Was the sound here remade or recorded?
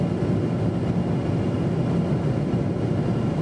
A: recorded